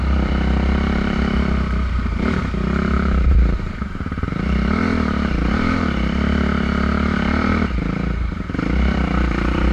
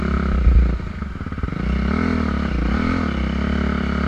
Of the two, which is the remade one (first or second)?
first